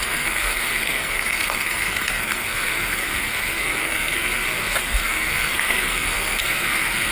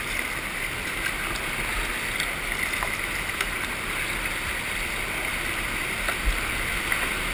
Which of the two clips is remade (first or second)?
first